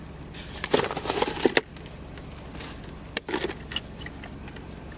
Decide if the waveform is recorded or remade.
recorded